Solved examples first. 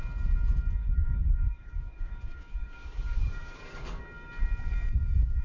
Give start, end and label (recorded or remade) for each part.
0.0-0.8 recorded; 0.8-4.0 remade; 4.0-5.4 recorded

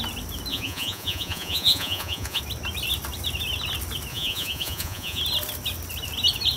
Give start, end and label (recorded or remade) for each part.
0.0-0.5 recorded; 0.5-2.4 remade; 2.4-4.1 recorded; 4.1-5.2 remade; 5.2-6.6 recorded

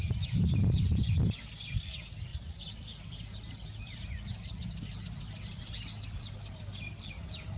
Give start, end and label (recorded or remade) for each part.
0.0-7.6 remade

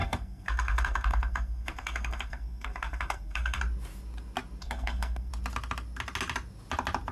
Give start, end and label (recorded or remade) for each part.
0.0-3.6 remade; 3.6-4.6 recorded; 4.6-5.3 remade; 5.3-7.1 recorded

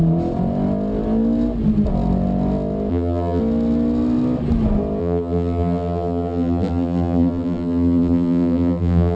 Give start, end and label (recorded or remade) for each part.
0.0-2.9 recorded; 2.9-3.4 remade; 3.4-5.0 recorded; 5.0-9.2 remade

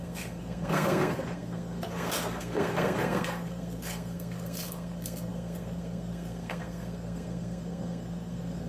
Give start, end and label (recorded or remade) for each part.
0.0-8.7 remade

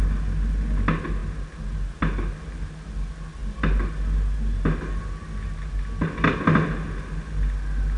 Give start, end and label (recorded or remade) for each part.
0.0-8.0 recorded

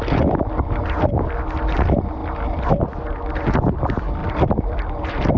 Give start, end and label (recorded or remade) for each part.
0.0-2.2 recorded; 2.2-2.7 remade; 2.7-4.2 recorded; 4.2-5.4 remade